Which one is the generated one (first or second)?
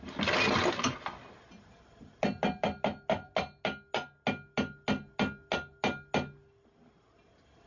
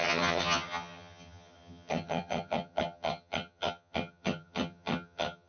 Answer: second